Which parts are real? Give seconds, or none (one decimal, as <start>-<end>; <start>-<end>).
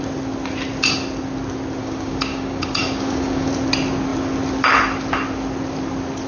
0.0-1.8; 3.5-6.3